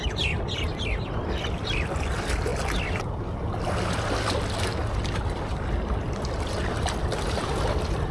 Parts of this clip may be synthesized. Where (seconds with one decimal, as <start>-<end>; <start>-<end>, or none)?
none